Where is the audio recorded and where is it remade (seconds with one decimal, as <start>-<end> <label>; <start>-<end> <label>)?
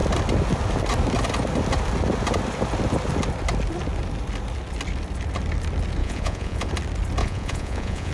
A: 0.0-6.0 recorded; 6.0-6.7 remade; 6.7-7.2 recorded; 7.2-8.1 remade